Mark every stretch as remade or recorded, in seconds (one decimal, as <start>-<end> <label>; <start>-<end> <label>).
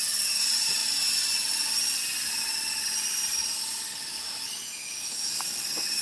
0.0-4.1 recorded; 4.1-5.3 remade; 5.3-6.0 recorded